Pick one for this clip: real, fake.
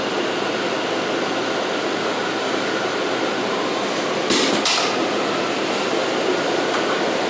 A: real